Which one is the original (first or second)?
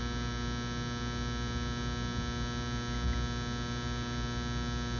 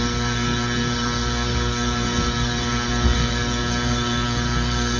first